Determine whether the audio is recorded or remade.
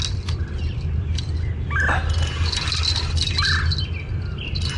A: recorded